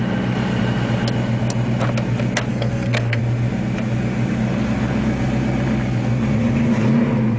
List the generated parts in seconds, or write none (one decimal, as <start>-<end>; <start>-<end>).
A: 2.5-3.2